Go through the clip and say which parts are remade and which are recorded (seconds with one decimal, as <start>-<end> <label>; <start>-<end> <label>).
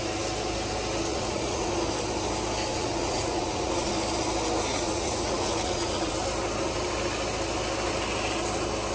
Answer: 0.0-1.1 recorded; 1.1-1.7 remade; 1.7-2.7 recorded; 2.7-3.9 remade; 3.9-4.7 recorded; 4.7-6.1 remade; 6.1-8.9 recorded